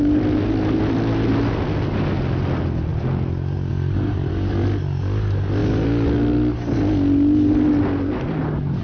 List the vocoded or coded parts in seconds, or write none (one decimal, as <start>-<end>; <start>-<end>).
none